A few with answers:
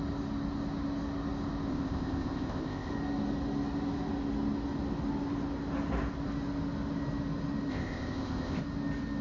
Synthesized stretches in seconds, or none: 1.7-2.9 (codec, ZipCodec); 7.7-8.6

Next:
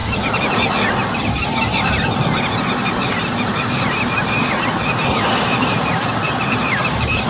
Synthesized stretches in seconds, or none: 1.2-7.3 (vocoder, BigVGAN v2)

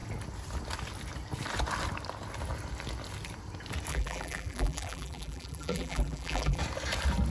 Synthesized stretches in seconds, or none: 3.9-6.6 (vocoder, BigVGAN v2)

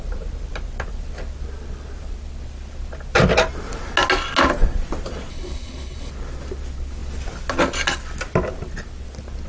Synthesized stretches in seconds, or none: 5.3-6.1 (codec, HILCodec)